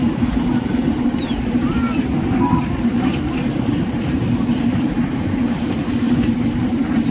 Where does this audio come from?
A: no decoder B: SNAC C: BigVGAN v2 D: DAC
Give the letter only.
C